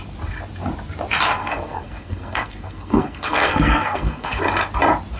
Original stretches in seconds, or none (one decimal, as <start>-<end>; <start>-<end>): 0.0-1.4; 4.4-5.2